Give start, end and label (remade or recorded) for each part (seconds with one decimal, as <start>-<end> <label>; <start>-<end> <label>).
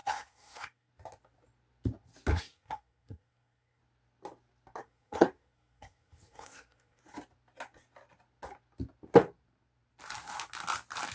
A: 0.0-0.9 remade; 0.9-2.3 recorded; 2.3-3.8 remade; 3.8-4.8 recorded; 4.8-7.0 remade; 7.0-11.1 recorded